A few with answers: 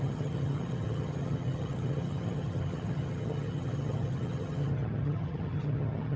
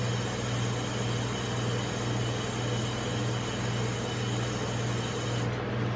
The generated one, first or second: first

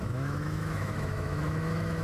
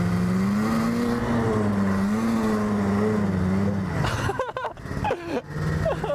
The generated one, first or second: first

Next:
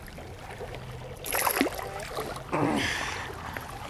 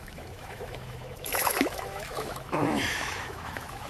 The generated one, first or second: second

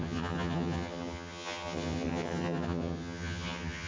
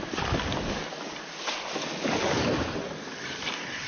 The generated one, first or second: first